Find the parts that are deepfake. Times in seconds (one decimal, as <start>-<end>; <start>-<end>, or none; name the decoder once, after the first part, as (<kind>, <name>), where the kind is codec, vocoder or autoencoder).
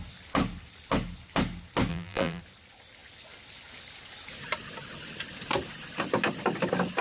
1.9-2.4 (vocoder, BigVGAN v2)